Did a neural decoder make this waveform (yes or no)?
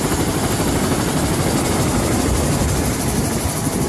no